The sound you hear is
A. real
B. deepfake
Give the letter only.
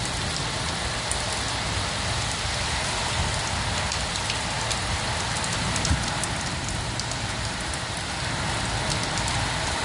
A